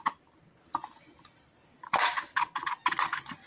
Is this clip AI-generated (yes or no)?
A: yes